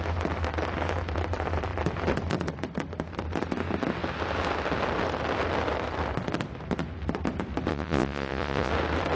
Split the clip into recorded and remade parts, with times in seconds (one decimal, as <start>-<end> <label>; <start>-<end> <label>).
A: 0.0-7.7 recorded; 7.7-8.7 remade; 8.7-9.2 recorded